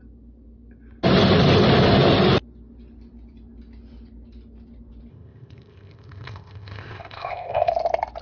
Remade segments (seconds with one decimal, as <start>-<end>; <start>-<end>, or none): 5.1-7.7